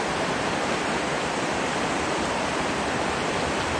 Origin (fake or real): real